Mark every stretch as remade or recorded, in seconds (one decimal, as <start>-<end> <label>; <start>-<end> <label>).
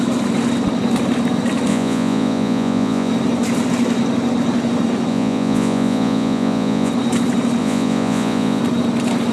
0.0-1.7 recorded; 1.7-3.1 remade; 3.1-5.1 recorded; 5.1-6.9 remade; 6.9-7.6 recorded; 7.6-8.6 remade; 8.6-9.3 recorded